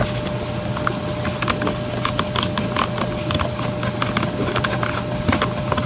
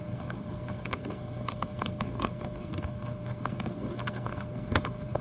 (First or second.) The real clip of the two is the first